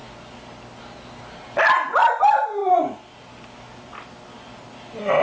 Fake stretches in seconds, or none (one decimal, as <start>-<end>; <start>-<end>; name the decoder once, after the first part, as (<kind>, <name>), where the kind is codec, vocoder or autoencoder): none